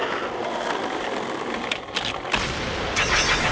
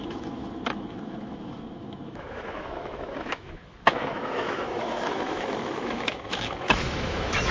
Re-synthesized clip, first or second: second